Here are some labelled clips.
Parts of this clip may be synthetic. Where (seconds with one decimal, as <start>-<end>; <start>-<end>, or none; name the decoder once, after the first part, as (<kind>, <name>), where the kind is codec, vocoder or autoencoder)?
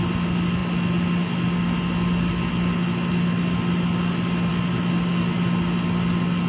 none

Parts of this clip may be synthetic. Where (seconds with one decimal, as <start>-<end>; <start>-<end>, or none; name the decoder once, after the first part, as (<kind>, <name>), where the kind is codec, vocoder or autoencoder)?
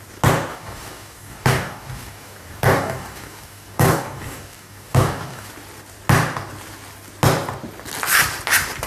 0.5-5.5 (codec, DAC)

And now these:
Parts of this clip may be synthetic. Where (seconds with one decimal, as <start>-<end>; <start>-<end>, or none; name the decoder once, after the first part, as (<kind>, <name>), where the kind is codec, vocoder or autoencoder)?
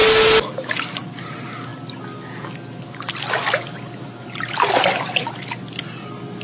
none